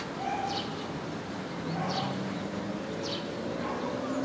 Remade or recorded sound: recorded